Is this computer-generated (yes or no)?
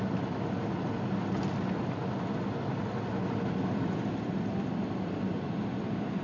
no